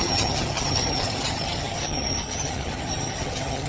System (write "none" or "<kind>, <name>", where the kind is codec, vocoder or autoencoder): vocoder, HiFi-GAN